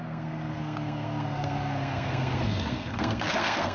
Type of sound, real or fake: fake